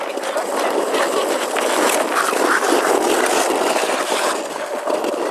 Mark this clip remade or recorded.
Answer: recorded